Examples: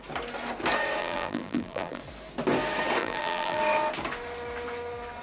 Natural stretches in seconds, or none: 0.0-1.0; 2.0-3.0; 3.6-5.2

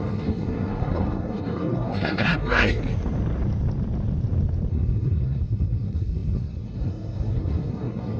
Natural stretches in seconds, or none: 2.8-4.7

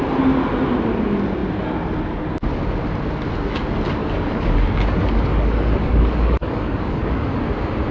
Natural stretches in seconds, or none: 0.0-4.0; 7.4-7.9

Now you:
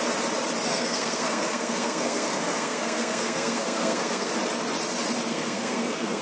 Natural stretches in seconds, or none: 0.0-0.7; 4.3-5.3

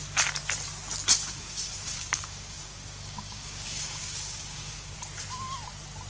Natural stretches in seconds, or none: 0.0-1.2; 4.9-6.1

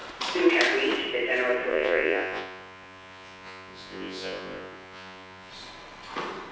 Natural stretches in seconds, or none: 0.0-1.7; 5.5-6.5

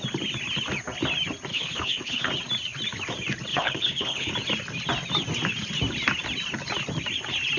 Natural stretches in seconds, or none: 0.0-1.5; 2.3-3.5; 4.3-7.6

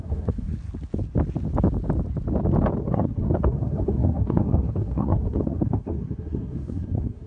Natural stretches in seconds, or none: 0.5-2.8